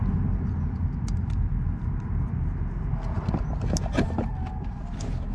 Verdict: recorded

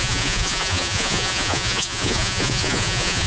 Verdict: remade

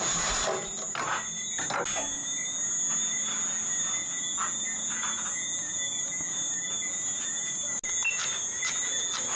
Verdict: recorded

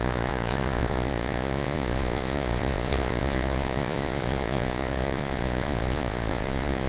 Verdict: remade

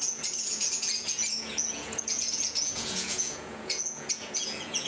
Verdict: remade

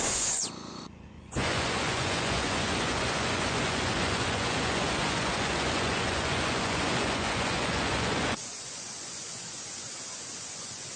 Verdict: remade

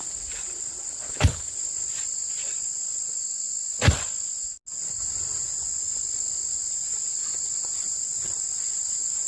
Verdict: recorded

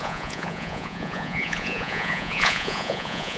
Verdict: remade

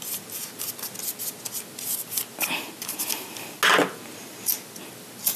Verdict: recorded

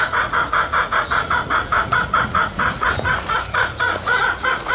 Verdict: remade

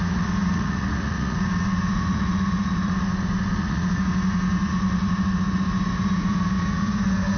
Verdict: remade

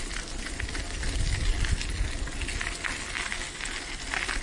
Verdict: recorded